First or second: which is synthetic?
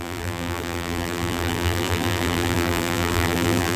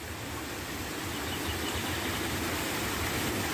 first